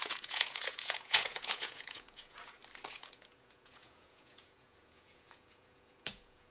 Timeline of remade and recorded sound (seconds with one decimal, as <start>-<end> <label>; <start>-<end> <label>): 0.0-2.6 remade; 2.6-3.1 recorded; 3.1-6.5 remade